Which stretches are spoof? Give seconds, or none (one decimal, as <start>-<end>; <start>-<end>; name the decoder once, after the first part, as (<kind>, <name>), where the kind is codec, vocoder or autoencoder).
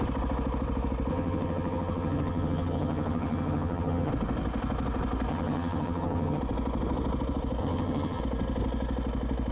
1.1-4.1 (vocoder, HiFi-GAN); 5.3-6.4; 7.6-8.2